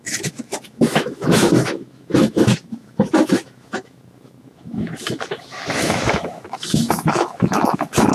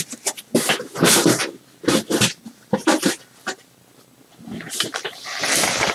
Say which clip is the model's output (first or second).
first